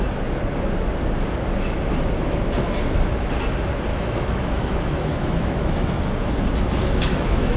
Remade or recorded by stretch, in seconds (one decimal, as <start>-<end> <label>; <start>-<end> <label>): 0.0-3.9 recorded; 3.9-6.0 remade; 6.0-6.8 recorded; 6.8-7.6 remade